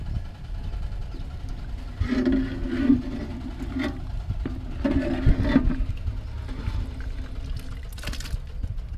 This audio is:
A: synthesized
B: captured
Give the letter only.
B